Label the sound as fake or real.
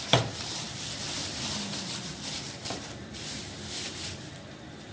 fake